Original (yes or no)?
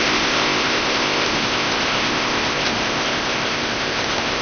no